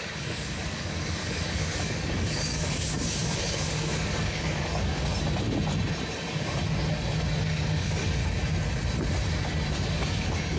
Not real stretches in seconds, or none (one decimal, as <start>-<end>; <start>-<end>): 0.0-5.1; 7.4-8.2; 9.7-10.6